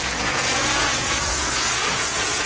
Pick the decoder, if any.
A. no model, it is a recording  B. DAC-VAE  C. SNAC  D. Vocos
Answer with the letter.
D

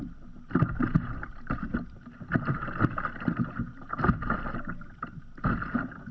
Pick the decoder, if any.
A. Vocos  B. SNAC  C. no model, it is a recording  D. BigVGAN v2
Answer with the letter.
C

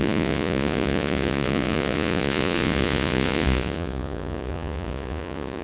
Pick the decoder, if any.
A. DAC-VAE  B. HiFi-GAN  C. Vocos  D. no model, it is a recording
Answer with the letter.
C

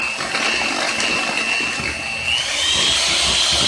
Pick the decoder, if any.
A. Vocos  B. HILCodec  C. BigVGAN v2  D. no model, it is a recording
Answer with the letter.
D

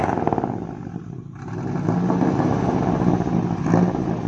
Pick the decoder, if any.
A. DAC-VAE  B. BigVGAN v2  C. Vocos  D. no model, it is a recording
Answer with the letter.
D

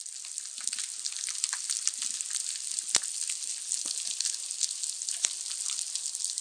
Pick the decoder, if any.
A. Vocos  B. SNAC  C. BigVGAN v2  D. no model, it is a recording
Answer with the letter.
D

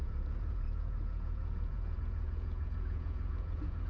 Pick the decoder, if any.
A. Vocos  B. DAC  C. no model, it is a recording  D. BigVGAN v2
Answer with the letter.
A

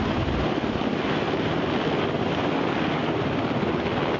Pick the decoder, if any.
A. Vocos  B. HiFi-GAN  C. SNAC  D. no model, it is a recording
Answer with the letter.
D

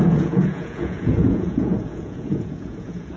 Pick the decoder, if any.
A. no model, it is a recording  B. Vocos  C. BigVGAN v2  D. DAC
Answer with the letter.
B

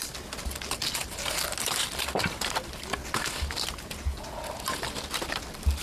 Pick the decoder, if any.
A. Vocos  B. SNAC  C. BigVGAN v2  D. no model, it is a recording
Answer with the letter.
D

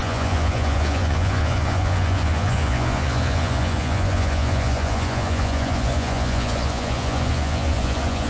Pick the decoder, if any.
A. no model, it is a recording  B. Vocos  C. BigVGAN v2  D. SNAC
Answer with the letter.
B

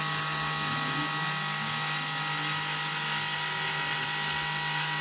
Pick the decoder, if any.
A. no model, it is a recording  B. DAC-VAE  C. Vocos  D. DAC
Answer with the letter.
A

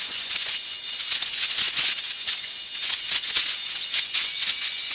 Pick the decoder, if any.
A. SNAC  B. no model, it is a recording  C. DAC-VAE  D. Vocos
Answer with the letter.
D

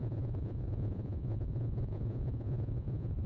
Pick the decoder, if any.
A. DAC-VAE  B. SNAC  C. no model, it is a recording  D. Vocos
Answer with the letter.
D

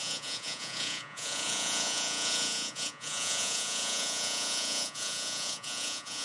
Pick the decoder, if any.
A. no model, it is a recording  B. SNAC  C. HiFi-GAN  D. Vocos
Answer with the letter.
D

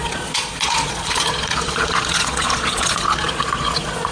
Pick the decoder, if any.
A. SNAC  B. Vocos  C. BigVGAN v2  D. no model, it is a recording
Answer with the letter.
B